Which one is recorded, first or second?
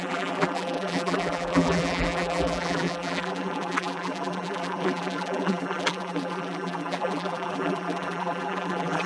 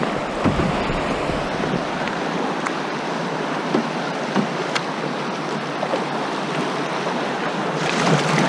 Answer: second